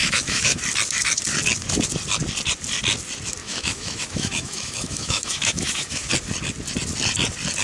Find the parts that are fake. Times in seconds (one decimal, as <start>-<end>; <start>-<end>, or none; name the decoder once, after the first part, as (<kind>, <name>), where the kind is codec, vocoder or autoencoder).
0.0-0.6 (autoencoder, DAC-VAE); 3.4-6.1